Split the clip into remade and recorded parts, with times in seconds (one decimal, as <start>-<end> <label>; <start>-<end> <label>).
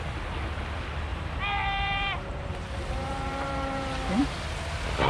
0.0-1.1 recorded; 1.1-4.2 remade; 4.2-5.1 recorded